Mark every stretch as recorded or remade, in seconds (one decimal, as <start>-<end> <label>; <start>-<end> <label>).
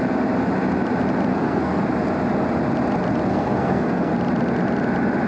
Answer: 0.0-1.3 recorded; 1.3-1.8 remade; 1.8-3.3 recorded; 3.3-4.1 remade; 4.1-5.3 recorded